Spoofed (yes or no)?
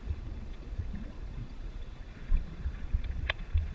yes